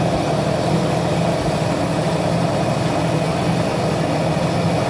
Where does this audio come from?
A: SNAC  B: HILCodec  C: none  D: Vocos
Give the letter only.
C